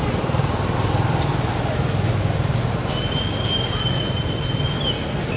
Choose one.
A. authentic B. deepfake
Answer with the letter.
A